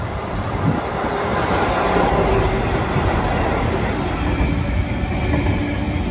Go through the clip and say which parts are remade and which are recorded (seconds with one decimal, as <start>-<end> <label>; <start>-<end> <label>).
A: 0.0-6.1 recorded

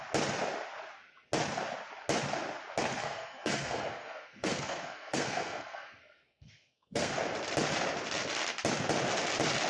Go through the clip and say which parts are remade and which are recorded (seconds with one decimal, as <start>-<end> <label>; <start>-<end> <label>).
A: 0.0-3.0 recorded; 3.0-7.1 remade; 7.1-9.7 recorded

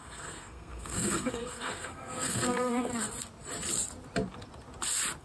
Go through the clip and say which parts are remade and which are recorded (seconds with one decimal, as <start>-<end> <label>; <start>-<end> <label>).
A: 0.0-2.9 remade; 2.9-5.2 recorded

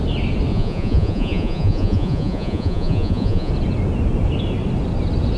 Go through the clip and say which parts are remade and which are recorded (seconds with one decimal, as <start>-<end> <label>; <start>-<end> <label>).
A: 0.0-0.5 recorded; 0.5-3.5 remade; 3.5-5.4 recorded